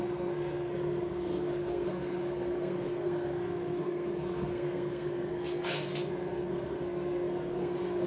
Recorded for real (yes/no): no